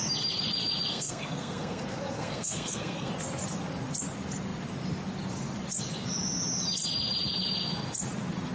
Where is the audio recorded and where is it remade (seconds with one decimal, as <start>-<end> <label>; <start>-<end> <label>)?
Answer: 0.0-0.9 recorded; 0.9-3.1 remade; 3.1-8.5 recorded